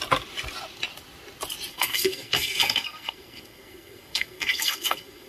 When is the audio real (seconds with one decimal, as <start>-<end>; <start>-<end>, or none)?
0.0-1.7